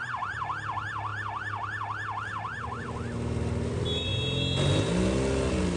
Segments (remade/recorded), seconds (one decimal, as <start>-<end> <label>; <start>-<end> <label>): 0.0-5.8 recorded